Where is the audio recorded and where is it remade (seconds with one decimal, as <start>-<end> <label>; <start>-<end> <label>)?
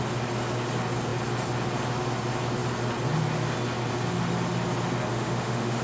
0.0-5.1 recorded; 5.1-5.8 remade